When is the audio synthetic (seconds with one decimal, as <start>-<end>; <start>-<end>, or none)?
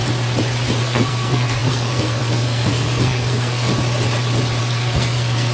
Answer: 0.8-3.7; 4.6-5.5